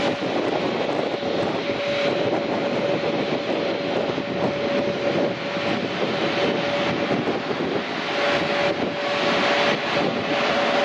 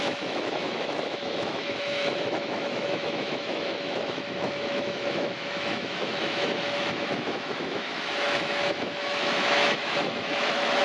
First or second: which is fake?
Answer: second